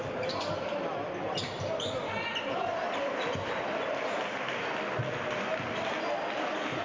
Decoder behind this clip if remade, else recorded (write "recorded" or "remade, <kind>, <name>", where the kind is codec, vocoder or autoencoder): recorded